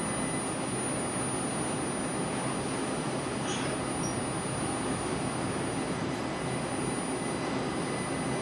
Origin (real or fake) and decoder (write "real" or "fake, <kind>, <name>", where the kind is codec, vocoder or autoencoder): real